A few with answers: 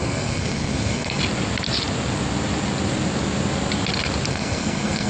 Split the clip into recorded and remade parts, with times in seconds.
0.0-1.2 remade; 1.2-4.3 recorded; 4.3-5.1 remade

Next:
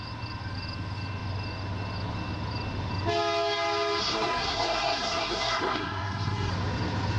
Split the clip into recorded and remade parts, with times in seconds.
0.0-4.0 recorded; 4.0-6.5 remade; 6.5-7.2 recorded